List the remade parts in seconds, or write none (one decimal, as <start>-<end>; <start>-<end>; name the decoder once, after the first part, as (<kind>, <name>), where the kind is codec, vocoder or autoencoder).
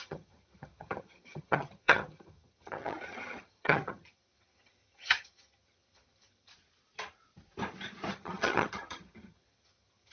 0.0-6.5 (vocoder, HiFi-GAN); 8.1-10.1